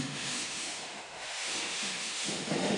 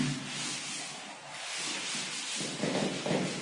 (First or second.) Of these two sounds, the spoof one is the first